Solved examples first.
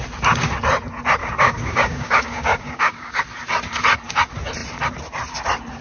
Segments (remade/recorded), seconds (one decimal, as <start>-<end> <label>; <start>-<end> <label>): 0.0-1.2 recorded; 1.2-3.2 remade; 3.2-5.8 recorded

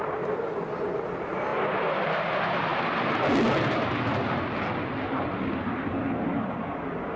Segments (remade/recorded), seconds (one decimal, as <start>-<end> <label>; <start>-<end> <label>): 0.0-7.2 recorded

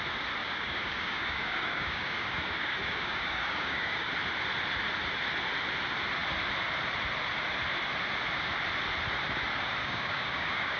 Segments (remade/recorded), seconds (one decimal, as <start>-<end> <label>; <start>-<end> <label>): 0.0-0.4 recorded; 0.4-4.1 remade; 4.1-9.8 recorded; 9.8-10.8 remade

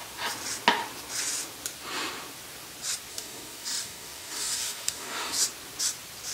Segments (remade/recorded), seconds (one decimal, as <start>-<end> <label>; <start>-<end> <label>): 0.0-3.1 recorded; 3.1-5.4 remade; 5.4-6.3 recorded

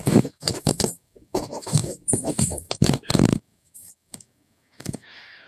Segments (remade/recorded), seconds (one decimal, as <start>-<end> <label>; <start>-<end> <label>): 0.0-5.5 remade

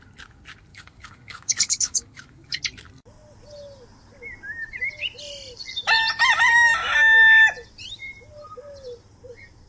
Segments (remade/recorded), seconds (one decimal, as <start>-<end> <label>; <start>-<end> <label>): 0.0-0.7 recorded; 0.7-2.6 remade; 2.6-9.7 recorded